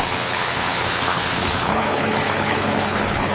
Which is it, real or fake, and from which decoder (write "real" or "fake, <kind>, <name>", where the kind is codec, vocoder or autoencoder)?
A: fake, codec, HILCodec